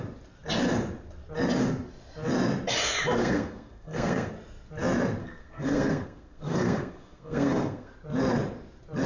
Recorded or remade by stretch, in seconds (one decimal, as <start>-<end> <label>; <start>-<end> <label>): 0.0-3.2 recorded; 3.2-4.3 remade; 4.3-5.2 recorded; 5.2-7.9 remade; 7.9-9.1 recorded